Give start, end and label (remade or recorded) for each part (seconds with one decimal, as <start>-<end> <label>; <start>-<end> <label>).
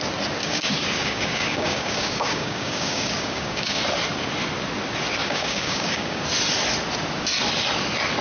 0.0-0.4 recorded; 0.4-3.8 remade; 3.8-5.2 recorded; 5.2-6.2 remade; 6.2-8.2 recorded